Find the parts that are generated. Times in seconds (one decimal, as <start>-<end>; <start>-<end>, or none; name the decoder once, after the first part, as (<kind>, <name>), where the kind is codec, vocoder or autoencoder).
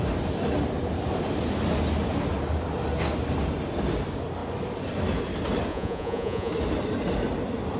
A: 5.7-6.5 (vocoder, Vocos)